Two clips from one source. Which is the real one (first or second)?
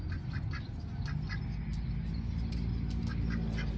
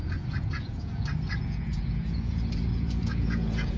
first